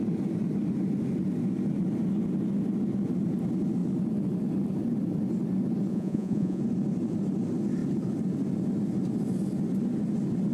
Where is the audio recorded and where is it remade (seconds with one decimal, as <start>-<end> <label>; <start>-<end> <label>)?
0.0-5.9 recorded; 5.9-6.6 remade; 6.6-10.5 recorded